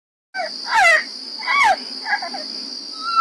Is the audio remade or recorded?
recorded